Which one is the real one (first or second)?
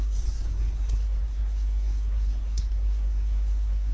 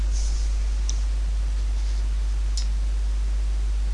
second